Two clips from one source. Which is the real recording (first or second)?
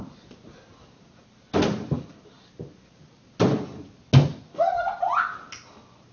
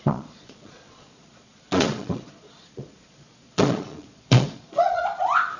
first